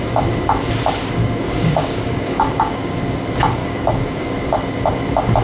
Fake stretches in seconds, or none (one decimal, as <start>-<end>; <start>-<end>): 1.2-2.9; 3.6-4.3